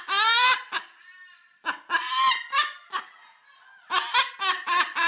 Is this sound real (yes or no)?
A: yes